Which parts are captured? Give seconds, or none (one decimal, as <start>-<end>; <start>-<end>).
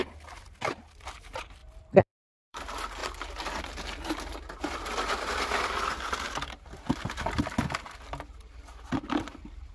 0.0-1.6; 2.6-9.7